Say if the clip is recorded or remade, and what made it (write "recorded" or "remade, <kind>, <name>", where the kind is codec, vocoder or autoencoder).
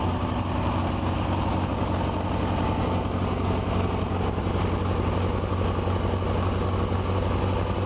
recorded